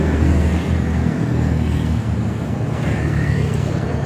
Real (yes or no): no